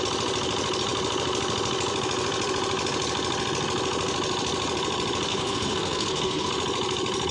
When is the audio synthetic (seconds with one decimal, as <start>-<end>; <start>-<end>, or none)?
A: 5.3-6.5